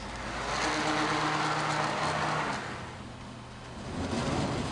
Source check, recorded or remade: recorded